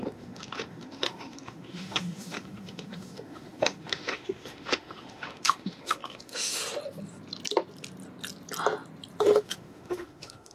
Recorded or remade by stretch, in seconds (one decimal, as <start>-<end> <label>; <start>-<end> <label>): 0.0-6.6 remade; 6.6-9.2 recorded; 9.2-10.5 remade